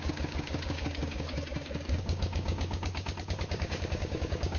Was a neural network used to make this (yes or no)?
yes